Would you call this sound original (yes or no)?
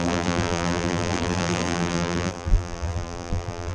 no